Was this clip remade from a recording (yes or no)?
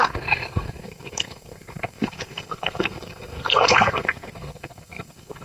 yes